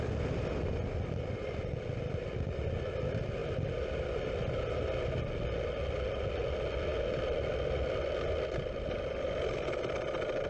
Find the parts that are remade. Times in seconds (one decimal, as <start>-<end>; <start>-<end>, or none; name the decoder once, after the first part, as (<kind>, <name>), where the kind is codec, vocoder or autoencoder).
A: none

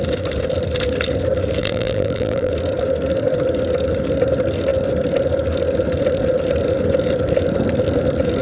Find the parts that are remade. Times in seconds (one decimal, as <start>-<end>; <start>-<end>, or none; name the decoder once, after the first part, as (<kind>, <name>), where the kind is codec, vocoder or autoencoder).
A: 1.6-2.5 (vocoder, BigVGAN v2)